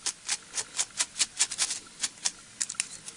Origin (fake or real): real